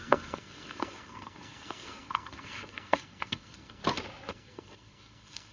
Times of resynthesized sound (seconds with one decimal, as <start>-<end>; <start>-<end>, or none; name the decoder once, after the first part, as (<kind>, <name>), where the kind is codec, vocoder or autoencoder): 0.0-3.8 (codec, SNAC); 4.3-5.5